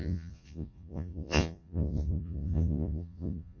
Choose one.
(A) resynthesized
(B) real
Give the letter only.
A